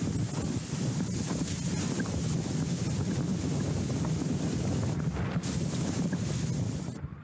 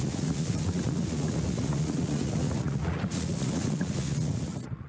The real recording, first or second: first